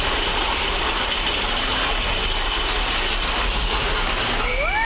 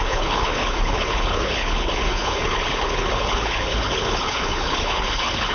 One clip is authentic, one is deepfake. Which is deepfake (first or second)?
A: second